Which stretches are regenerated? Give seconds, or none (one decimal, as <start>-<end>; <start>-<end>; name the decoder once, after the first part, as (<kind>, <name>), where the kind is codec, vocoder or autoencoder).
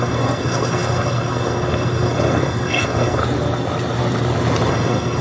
0.0-3.2 (codec, SNAC); 4.7-5.2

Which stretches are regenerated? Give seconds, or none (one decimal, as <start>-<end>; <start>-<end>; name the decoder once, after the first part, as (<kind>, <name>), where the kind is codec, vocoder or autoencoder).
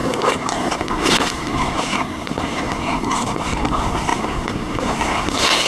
0.0-5.7 (codec, SNAC)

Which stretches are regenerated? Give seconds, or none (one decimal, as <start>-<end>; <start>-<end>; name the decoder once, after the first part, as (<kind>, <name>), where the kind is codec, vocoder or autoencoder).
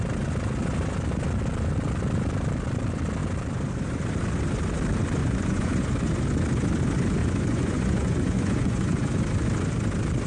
5.2-5.7 (vocoder, Vocos); 7.2-9.1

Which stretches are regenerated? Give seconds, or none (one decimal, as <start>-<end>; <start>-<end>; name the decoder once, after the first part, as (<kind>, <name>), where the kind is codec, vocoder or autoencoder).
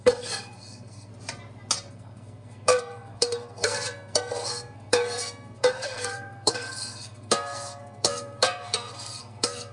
0.0-1.1 (codec, SNAC); 1.9-9.7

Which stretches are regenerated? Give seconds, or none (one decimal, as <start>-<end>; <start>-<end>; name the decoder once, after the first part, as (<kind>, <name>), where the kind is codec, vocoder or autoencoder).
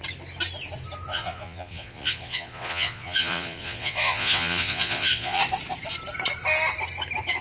1.1-5.4 (vocoder, Vocos)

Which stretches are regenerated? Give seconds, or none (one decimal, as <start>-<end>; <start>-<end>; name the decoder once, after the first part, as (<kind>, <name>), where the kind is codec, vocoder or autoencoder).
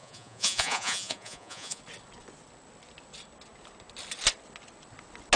0.0-1.8 (vocoder, Vocos)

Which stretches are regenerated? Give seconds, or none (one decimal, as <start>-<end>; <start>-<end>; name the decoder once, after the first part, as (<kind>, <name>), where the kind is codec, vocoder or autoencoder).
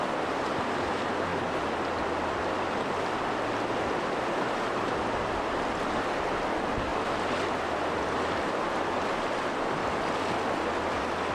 none